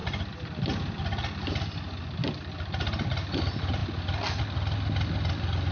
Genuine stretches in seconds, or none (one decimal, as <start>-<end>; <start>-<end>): 0.0-5.7